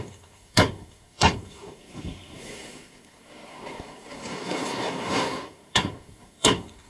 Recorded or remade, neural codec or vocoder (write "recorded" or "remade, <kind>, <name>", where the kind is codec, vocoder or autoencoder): remade, codec, SNAC